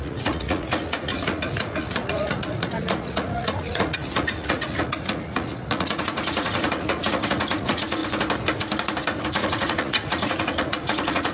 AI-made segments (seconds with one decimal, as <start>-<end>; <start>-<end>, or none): 0.0-8.0; 9.3-11.3